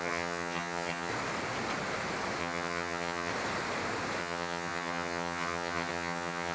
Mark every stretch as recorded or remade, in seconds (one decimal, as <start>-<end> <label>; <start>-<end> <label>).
0.0-1.1 remade; 1.1-2.4 recorded; 2.4-3.3 remade; 3.3-4.2 recorded; 4.2-6.5 remade